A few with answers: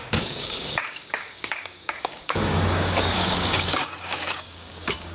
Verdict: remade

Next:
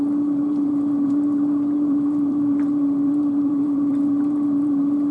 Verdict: remade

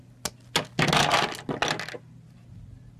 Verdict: recorded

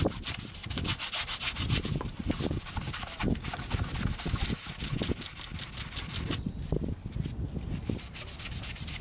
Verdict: recorded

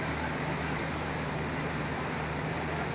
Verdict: remade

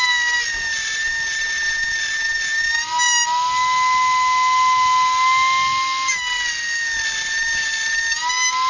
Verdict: recorded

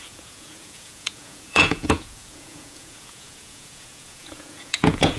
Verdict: remade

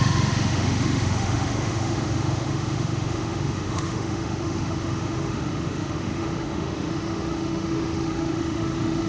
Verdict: remade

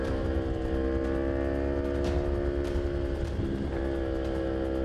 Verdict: recorded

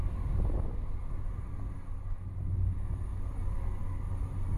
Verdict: recorded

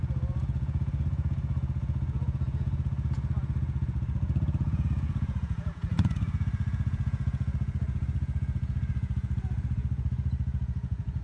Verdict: remade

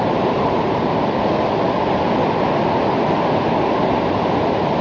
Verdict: recorded